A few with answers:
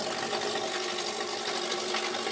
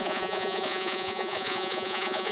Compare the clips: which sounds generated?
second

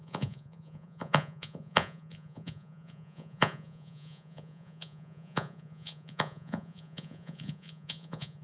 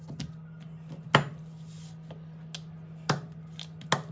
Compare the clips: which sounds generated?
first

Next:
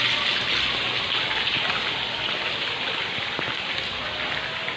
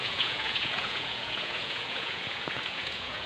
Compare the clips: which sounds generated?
second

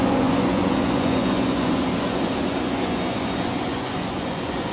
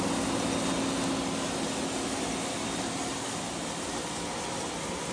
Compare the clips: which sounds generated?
first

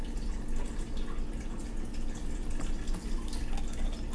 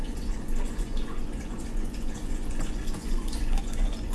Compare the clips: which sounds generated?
second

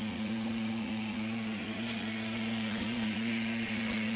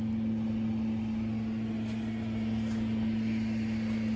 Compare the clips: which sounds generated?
first